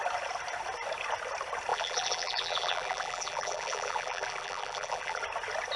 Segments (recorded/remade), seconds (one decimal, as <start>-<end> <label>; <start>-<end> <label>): 0.0-1.7 recorded; 1.7-5.2 remade; 5.2-5.8 recorded